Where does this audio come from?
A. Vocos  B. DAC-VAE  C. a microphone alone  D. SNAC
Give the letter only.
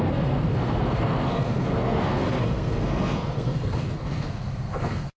D